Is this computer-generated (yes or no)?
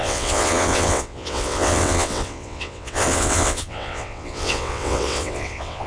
yes